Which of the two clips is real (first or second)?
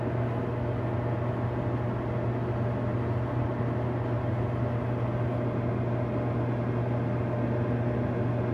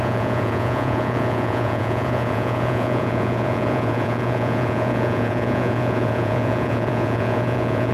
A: first